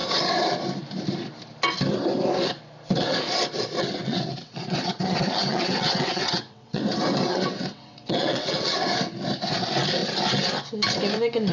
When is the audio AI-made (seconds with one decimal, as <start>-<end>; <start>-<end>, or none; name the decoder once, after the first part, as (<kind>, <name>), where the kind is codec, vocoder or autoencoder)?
4.0-6.8 (vocoder, WaveNeXt); 7.3-8.9